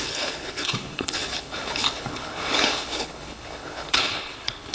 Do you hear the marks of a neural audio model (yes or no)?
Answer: yes